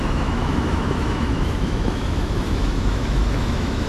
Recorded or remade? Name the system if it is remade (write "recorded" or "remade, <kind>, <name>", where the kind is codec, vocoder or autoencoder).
remade, autoencoder, DAC-VAE